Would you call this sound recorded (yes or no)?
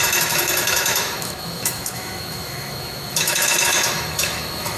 no